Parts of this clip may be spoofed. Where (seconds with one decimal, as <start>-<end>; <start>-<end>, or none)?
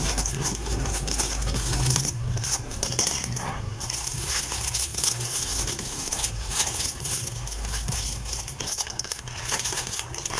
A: 0.0-10.4